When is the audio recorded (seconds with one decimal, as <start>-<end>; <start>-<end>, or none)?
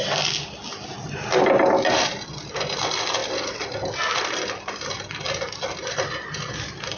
0.0-7.0